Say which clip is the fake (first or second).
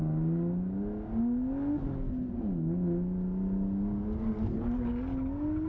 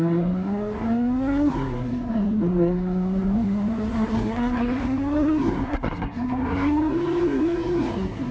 second